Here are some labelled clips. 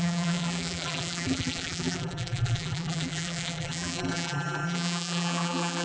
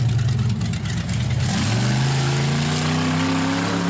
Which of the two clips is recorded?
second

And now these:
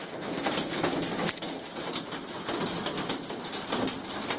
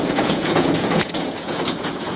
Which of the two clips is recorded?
first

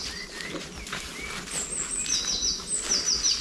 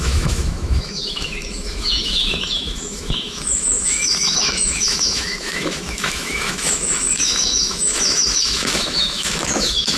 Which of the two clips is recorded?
first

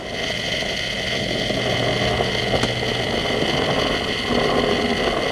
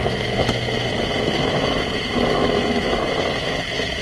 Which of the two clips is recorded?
first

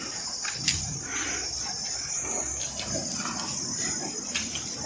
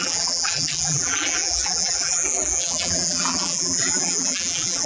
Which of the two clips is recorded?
first